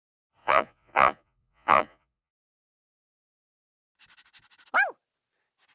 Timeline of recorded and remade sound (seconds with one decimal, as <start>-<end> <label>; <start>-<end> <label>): 0.0-0.4 recorded; 0.4-2.6 remade; 2.6-5.7 recorded